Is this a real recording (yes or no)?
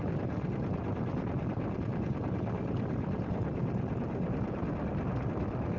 yes